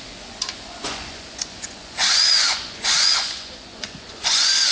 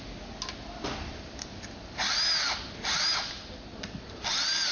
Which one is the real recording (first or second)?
second